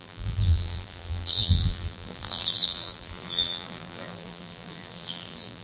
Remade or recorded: remade